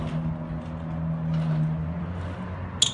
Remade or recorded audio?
recorded